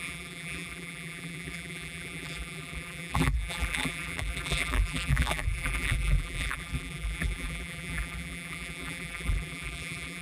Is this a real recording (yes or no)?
no